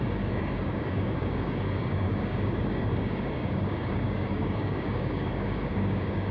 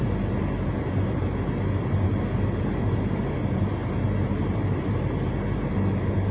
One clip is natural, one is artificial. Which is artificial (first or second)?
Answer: first